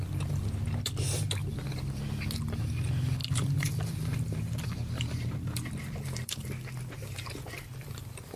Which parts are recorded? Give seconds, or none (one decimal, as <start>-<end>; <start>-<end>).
0.0-3.2; 6.6-8.4